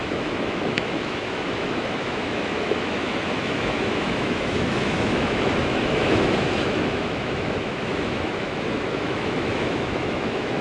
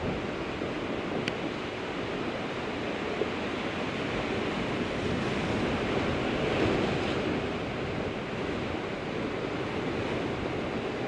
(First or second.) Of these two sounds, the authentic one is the second